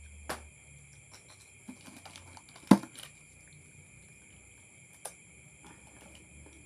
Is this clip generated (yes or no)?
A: no